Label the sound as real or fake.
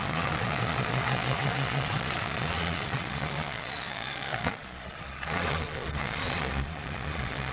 fake